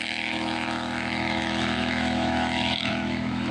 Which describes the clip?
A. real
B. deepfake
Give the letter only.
B